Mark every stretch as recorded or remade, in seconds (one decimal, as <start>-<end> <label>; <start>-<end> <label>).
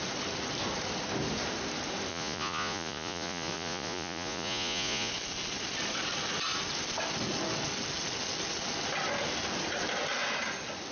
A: 0.0-2.1 recorded; 2.1-5.1 remade; 5.1-10.9 recorded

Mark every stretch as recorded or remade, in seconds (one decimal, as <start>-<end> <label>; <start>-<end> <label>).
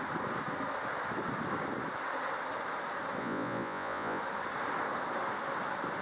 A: 0.0-3.2 recorded; 3.2-4.2 remade; 4.2-6.0 recorded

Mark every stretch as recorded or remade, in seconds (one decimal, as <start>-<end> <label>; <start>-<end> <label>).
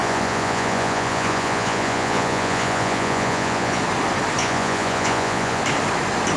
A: 0.0-3.8 remade; 3.8-4.4 recorded; 4.4-5.6 remade; 5.6-6.4 recorded